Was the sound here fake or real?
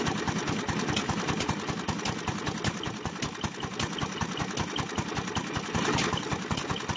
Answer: real